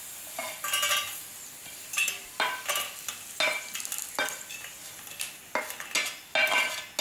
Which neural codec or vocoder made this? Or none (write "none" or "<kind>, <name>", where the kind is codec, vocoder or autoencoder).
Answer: none